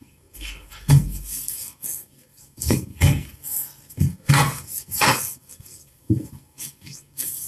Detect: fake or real fake